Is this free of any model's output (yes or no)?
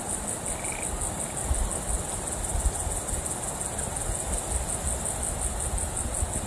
yes